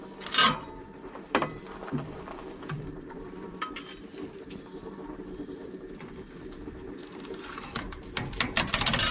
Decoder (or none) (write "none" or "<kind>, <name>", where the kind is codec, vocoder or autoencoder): vocoder, BigVGAN v2